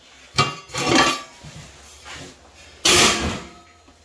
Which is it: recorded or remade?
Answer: recorded